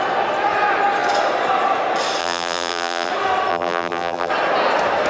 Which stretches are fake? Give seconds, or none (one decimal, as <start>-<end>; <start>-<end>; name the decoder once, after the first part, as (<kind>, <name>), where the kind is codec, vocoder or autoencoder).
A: 2.2-3.1 (vocoder, BigVGAN v2); 3.5-4.3